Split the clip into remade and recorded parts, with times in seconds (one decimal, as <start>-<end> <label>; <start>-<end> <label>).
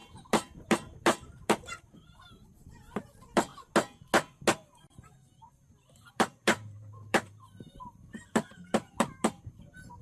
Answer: 0.0-3.5 remade; 3.5-6.1 recorded; 6.1-10.0 remade